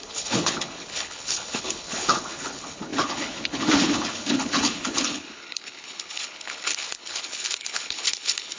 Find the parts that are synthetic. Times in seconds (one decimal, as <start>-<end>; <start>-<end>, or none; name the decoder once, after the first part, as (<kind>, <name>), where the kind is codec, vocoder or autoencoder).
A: 0.0-8.6 (codec, HILCodec)